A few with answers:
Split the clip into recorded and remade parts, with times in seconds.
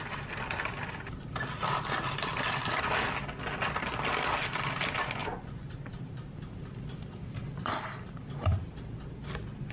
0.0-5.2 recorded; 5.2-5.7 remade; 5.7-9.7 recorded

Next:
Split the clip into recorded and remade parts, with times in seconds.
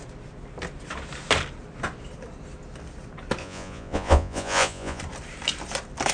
0.0-3.4 recorded; 3.4-5.0 remade; 5.0-6.1 recorded